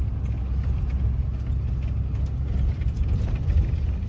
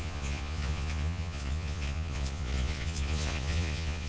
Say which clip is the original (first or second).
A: first